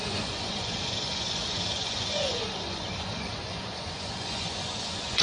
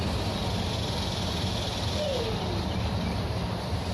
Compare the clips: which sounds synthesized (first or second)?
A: first